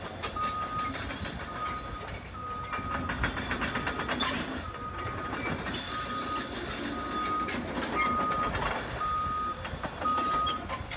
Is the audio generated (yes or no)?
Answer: no